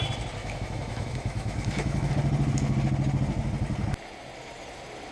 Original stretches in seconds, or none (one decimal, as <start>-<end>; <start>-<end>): 0.0-0.4; 2.1-5.1